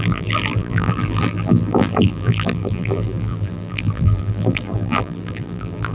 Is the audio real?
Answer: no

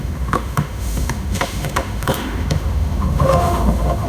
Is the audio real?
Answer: no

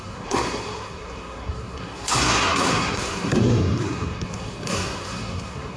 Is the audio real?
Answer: no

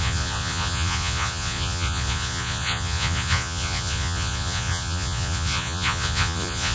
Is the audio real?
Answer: no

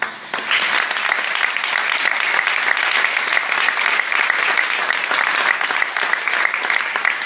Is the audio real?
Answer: yes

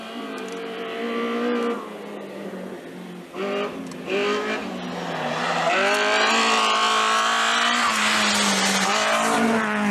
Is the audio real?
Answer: yes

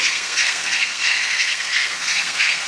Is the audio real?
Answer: no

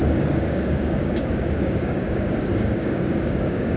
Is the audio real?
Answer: no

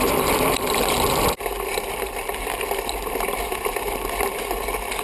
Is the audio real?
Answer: yes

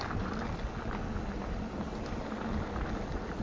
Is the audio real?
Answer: yes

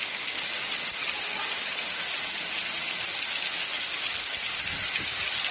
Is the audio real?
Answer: yes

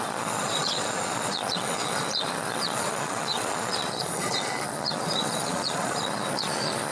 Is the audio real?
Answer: no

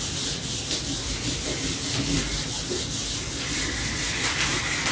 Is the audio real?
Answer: yes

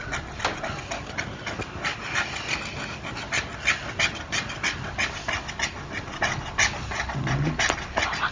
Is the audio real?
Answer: yes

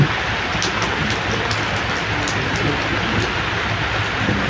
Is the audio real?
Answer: yes